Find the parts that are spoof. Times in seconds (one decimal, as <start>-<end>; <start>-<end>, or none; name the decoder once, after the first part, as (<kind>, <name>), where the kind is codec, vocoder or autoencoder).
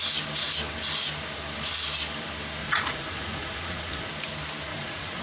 2.6-4.1 (vocoder, Vocos); 4.7-5.2